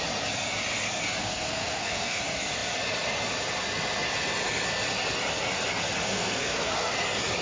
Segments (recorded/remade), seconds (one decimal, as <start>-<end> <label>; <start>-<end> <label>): 0.0-1.2 recorded; 1.2-2.2 remade; 2.2-6.0 recorded; 6.0-6.9 remade; 6.9-7.4 recorded